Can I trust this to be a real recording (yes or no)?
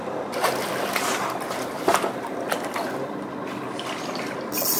yes